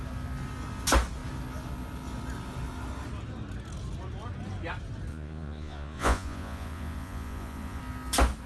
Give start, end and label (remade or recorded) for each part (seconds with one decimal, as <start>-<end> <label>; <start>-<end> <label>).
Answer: 0.0-5.1 recorded; 5.1-7.8 remade; 7.8-8.5 recorded